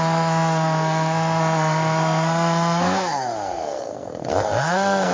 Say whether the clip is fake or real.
fake